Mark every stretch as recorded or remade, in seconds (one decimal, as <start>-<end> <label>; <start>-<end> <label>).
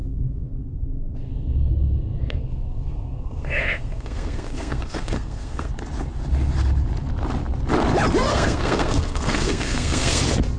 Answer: 0.0-1.7 remade; 1.7-2.2 recorded; 2.2-5.7 remade; 5.7-8.3 recorded; 8.3-10.2 remade; 10.2-10.6 recorded